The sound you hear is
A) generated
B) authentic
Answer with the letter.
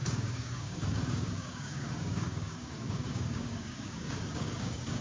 A